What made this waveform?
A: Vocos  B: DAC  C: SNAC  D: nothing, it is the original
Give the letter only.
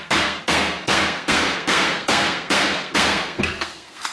C